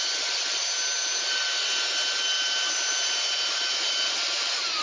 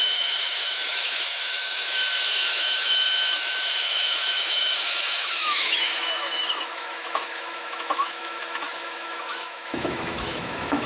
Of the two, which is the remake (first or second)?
second